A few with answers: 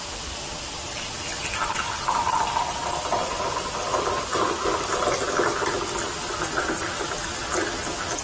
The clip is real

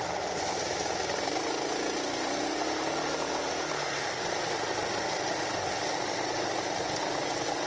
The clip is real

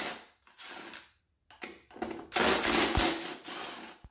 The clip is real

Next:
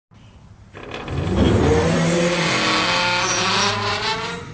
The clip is real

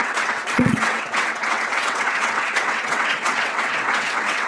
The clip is fake